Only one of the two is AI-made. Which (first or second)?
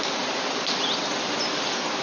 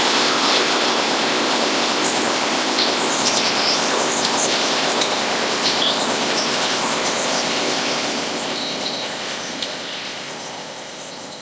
second